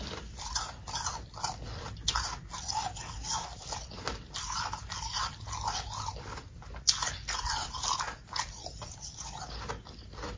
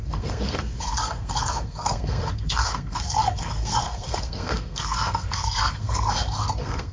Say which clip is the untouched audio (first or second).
first